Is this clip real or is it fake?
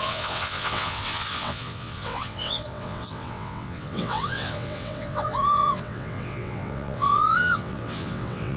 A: fake